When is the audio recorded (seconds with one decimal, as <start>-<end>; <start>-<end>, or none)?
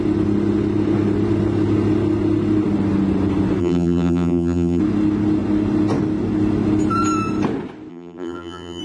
0.0-3.6; 4.8-7.9